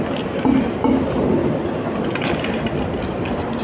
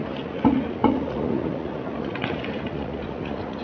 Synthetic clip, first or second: second